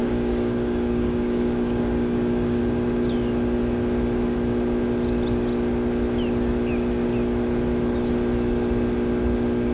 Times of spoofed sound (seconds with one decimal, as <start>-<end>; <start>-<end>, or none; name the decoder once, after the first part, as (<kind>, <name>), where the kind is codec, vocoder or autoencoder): 0.0-2.6 (codec, DAC)